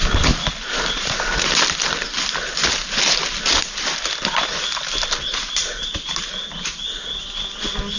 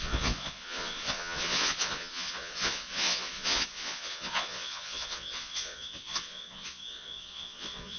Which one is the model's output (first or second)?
second